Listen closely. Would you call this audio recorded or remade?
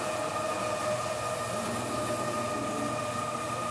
recorded